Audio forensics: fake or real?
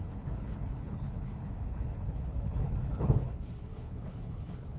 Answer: fake